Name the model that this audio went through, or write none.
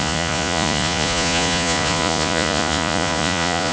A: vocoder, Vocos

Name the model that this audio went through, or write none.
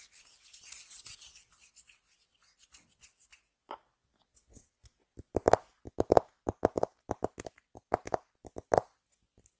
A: none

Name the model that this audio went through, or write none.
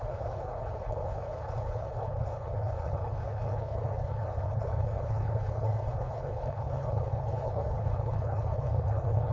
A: codec, HILCodec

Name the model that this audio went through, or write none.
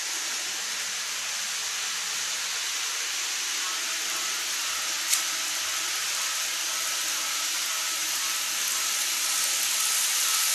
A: none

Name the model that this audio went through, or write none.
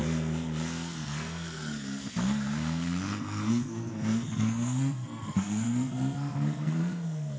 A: codec, SNAC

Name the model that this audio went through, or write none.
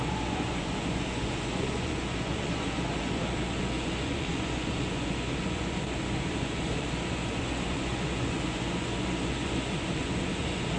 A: vocoder, Vocos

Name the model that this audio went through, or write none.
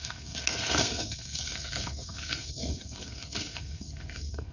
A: codec, SNAC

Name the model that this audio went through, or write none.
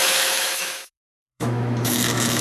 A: autoencoder, DAC-VAE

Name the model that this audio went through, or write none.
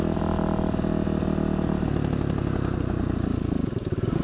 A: none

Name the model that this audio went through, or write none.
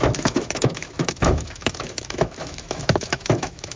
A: autoencoder, DAC-VAE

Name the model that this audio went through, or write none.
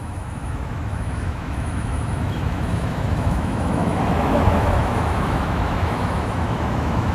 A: autoencoder, DAC-VAE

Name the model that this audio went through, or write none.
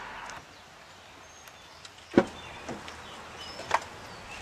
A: none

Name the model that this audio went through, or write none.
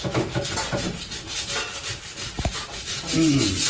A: none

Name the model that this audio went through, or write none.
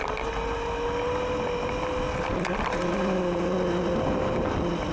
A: none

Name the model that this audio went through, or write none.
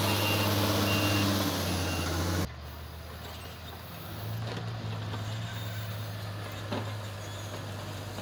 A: none